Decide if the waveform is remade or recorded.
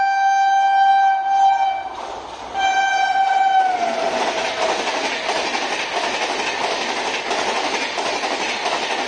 recorded